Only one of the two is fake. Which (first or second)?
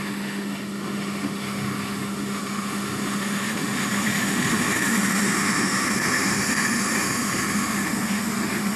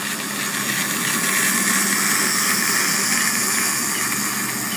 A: first